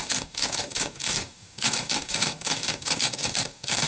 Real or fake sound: fake